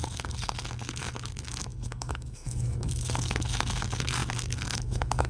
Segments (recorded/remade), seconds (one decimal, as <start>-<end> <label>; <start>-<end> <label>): 0.0-5.3 remade